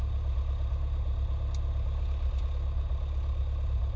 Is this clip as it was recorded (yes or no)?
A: yes